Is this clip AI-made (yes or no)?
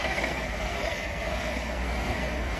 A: yes